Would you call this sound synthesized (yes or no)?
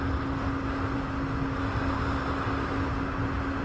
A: no